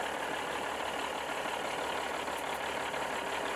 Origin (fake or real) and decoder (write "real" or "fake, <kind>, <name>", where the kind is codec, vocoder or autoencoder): real